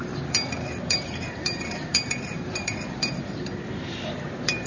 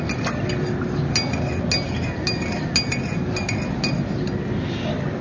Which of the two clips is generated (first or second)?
first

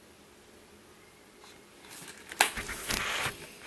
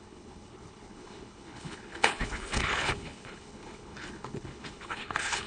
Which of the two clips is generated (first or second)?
second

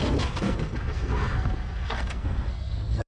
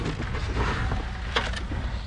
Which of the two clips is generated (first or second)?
first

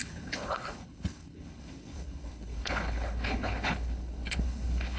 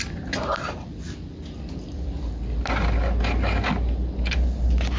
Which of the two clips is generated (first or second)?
first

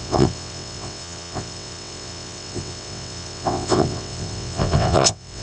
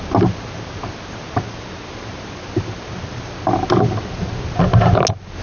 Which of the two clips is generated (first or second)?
first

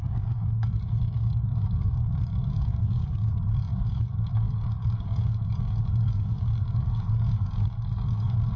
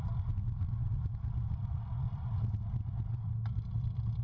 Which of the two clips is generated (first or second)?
first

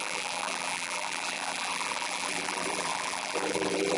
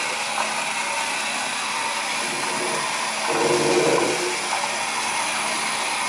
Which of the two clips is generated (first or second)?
first